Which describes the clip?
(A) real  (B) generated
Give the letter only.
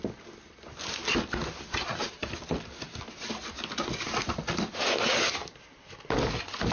A